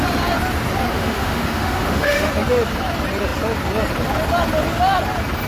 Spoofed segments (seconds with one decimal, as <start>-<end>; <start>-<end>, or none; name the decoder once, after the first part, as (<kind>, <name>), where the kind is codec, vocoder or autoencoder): 0.9-2.3 (autoencoder, DAC-VAE)